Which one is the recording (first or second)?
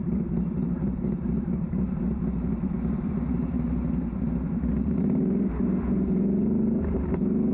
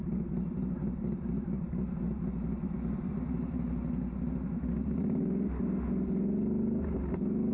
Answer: second